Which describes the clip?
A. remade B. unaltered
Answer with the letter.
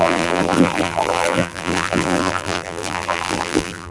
A